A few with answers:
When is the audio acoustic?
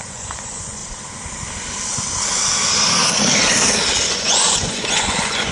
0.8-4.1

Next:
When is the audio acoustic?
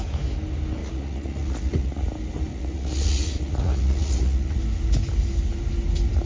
0.0-0.8; 2.0-2.5; 4.6-6.3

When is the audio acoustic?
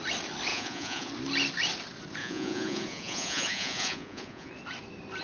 0.0-0.5; 1.1-2.2; 4.5-5.2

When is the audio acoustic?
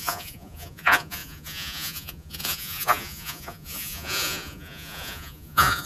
none